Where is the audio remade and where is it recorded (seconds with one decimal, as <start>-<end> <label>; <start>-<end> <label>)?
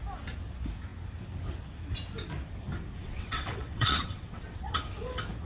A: 0.0-3.0 recorded; 3.0-4.8 remade; 4.8-5.5 recorded